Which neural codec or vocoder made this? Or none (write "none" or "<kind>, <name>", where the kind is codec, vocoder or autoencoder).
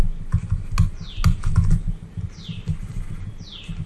none